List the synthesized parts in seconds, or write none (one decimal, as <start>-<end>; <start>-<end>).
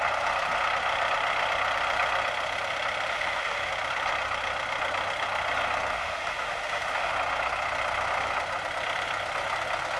3.1-3.7; 5.9-7.1